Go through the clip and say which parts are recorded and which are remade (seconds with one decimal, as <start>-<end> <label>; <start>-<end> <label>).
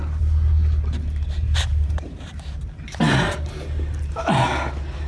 0.0-1.7 recorded; 1.7-2.6 remade; 2.6-5.1 recorded